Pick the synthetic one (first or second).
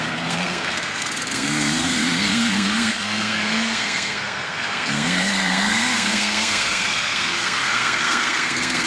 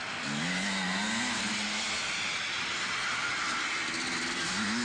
first